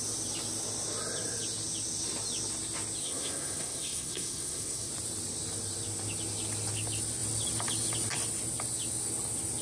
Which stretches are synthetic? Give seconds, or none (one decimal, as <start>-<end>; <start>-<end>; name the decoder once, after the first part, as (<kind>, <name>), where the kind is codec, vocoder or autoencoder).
3.0-4.9 (codec, SNAC)